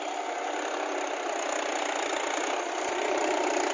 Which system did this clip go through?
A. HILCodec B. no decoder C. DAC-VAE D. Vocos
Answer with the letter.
B